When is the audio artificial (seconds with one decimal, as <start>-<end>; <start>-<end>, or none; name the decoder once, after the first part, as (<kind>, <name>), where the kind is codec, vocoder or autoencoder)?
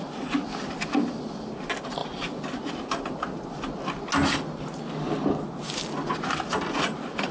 none